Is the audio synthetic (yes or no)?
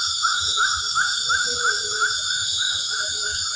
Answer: yes